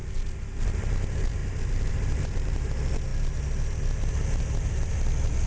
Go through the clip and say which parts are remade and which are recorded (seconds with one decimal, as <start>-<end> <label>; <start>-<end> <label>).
0.0-0.6 recorded; 0.6-1.4 remade; 1.4-1.9 recorded; 1.9-3.1 remade; 3.1-4.3 recorded; 4.3-5.5 remade